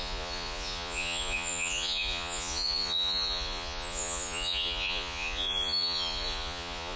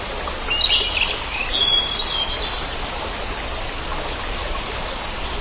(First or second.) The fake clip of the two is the first